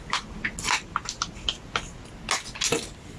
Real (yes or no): yes